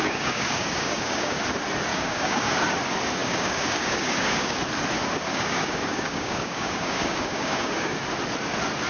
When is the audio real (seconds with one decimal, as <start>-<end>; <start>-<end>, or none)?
1.4-1.9; 2.5-3.2; 4.6-5.3; 8.0-8.9

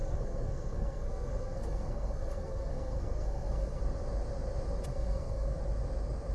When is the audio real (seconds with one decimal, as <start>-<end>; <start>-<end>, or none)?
3.8-4.9; 5.6-6.3